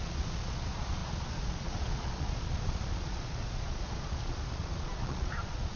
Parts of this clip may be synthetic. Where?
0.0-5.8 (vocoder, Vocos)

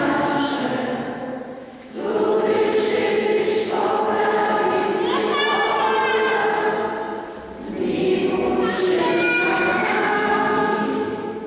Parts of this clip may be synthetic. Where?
0.0-0.9 (autoencoder, DAC-VAE); 1.6-4.9; 8.7-11.5

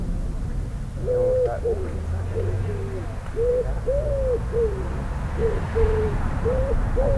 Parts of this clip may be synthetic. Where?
5.4-7.2 (vocoder, BigVGAN v2)

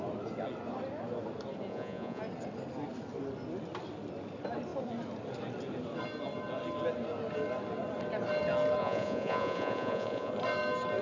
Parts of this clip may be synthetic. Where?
1.7-2.2 (vocoder, Vocos); 8.8-10.3

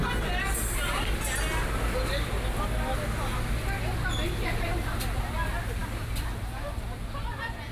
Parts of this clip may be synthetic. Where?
none

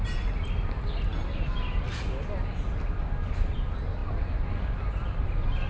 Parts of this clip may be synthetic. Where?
none

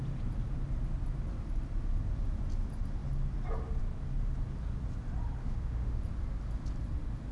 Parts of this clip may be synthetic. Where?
5.4-6.0 (autoencoder, DAC-VAE)